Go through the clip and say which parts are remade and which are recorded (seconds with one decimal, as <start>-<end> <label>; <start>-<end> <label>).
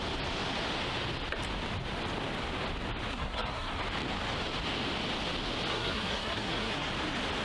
0.0-3.1 recorded; 3.1-3.7 remade; 3.7-5.7 recorded; 5.7-6.9 remade; 6.9-7.4 recorded